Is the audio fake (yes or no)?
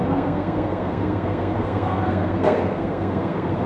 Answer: yes